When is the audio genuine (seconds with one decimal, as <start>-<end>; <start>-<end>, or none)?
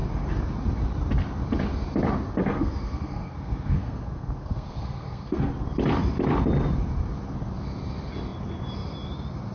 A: 0.0-2.4; 5.5-9.5